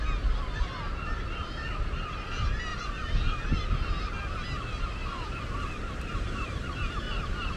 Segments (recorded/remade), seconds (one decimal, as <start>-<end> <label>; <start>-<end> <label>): 0.0-2.7 recorded; 2.7-3.4 remade; 3.4-5.0 recorded; 5.0-7.6 remade